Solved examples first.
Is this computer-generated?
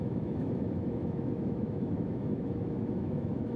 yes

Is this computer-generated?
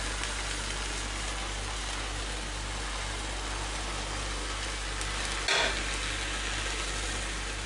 no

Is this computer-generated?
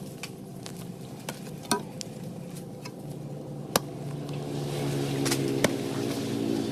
no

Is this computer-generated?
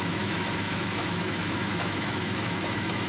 yes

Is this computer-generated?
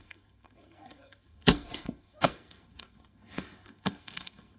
yes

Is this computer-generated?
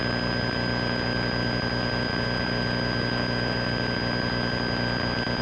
no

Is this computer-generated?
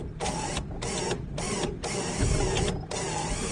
no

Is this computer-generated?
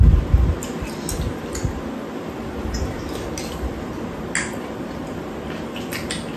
no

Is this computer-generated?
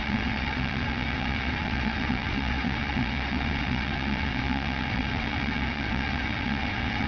yes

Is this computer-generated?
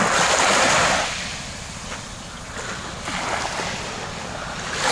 no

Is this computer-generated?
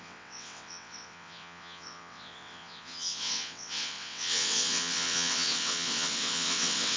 yes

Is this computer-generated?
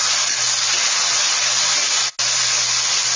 no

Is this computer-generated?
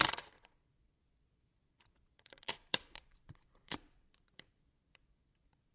yes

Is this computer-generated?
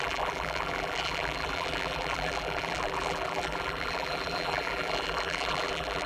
yes